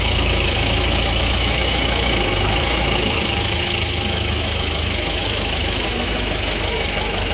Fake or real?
fake